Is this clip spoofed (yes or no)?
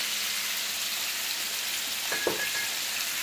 no